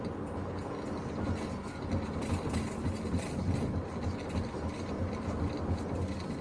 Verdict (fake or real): real